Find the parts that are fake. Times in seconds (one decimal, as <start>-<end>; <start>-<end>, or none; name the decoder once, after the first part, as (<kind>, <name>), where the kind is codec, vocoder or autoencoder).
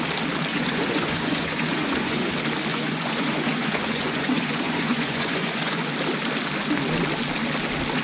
0.5-2.3 (vocoder, Vocos); 2.7-5.9